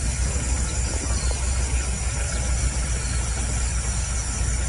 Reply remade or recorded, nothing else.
recorded